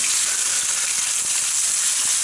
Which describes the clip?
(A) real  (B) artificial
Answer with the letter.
A